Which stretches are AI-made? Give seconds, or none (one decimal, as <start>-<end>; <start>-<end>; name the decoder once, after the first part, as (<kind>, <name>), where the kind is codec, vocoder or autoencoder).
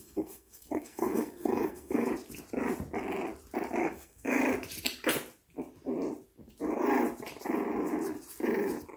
0.0-2.1 (codec, SNAC); 3.8-4.4